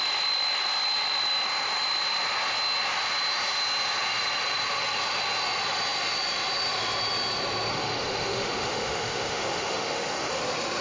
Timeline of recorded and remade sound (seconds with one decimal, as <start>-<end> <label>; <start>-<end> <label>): 0.0-7.7 recorded; 7.7-10.4 remade; 10.4-10.8 recorded

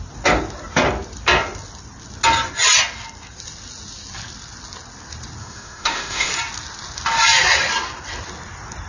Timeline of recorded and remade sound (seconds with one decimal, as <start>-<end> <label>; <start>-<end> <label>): 0.0-5.4 recorded; 5.4-6.3 remade; 6.3-8.9 recorded

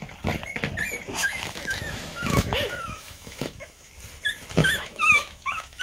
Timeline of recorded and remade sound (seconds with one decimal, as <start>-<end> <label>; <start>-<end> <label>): 0.0-1.2 recorded; 1.2-3.9 remade; 3.9-4.6 recorded; 4.6-5.8 remade

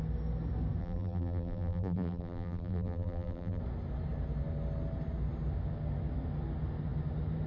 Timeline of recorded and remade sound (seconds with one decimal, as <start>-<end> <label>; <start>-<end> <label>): 0.0-0.8 recorded; 0.8-3.6 remade; 3.6-7.5 recorded

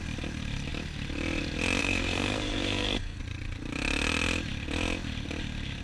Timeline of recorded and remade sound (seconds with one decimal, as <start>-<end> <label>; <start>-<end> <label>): 0.0-1.8 recorded; 1.8-3.2 remade; 3.2-5.8 recorded